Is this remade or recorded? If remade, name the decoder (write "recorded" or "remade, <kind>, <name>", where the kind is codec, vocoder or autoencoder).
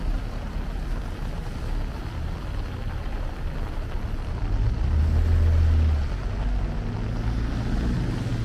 recorded